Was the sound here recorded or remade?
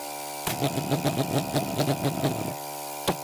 recorded